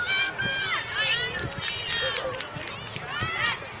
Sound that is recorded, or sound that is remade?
recorded